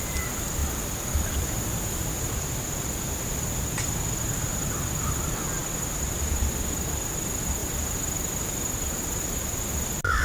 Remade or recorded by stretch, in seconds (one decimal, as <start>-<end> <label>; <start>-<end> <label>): 0.0-0.6 recorded; 0.6-2.5 remade; 2.5-5.6 recorded; 5.6-6.5 remade; 6.5-7.6 recorded; 7.6-9.0 remade; 9.0-10.2 recorded